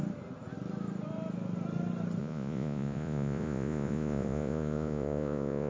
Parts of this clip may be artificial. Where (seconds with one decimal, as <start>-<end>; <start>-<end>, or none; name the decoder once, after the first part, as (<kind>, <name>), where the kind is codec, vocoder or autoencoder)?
2.2-5.7 (vocoder, Vocos)